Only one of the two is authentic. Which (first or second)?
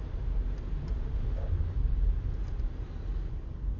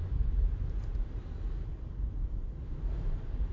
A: first